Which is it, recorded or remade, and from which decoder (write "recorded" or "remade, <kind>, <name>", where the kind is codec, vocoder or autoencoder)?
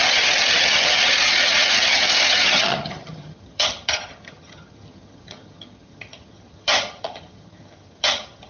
remade, vocoder, HiFi-GAN